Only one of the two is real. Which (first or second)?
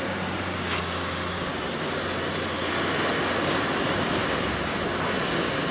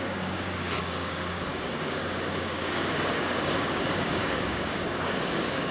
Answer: first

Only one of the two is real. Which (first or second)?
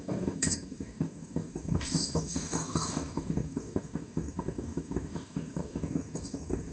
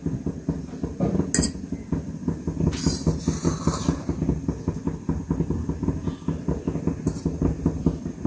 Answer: second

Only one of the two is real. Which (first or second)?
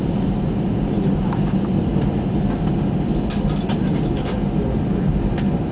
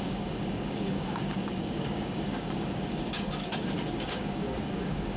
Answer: first